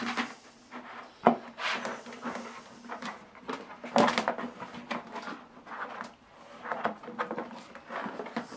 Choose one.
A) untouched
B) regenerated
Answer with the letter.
A